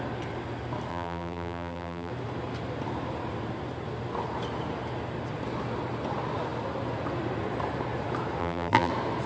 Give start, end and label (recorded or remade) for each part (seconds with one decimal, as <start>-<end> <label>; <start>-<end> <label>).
0.0-0.9 recorded; 0.9-2.1 remade; 2.1-8.4 recorded; 8.4-8.9 remade; 8.9-9.3 recorded